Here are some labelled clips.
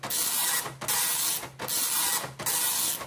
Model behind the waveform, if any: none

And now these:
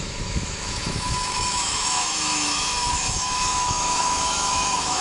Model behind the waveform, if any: autoencoder, DAC-VAE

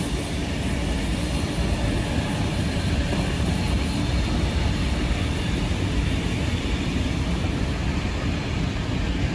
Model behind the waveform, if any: none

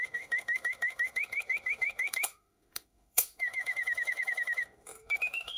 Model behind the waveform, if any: autoencoder, DAC-VAE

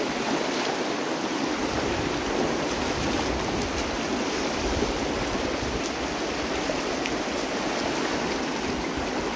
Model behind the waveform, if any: none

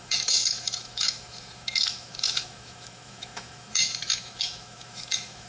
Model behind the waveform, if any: autoencoder, DAC-VAE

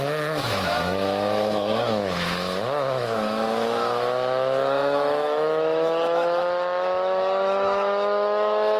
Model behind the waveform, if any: autoencoder, DAC-VAE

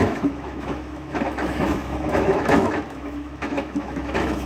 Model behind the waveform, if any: autoencoder, DAC-VAE